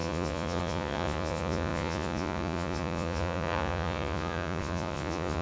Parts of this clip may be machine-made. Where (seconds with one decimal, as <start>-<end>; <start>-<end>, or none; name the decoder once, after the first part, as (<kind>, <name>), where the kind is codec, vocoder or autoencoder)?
0.0-5.4 (vocoder, Vocos)